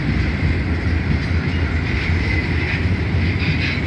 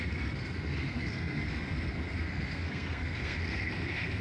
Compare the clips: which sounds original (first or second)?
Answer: first